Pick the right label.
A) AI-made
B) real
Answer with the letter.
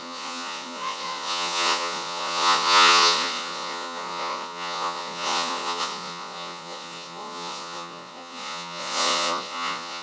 A